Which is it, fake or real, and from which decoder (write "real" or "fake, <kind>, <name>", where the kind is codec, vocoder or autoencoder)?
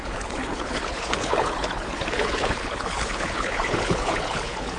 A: fake, codec, HILCodec